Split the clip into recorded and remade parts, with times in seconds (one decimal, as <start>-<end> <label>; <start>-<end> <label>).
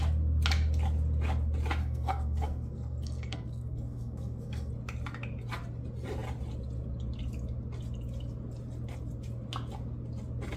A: 0.0-1.8 recorded; 1.8-4.7 remade; 4.7-10.6 recorded